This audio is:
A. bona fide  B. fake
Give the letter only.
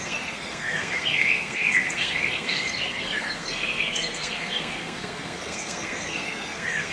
B